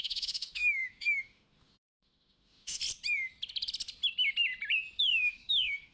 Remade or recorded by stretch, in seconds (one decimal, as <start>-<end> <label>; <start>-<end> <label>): 0.0-2.8 remade; 2.8-5.0 recorded; 5.0-5.9 remade